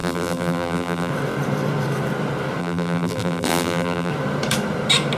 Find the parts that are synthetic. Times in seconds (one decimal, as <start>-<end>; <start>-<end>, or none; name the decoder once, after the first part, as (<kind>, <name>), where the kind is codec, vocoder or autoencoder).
0.0-1.1 (vocoder, BigVGAN v2); 2.6-4.1